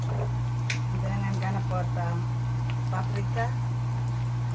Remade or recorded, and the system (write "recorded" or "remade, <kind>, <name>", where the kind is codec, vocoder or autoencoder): recorded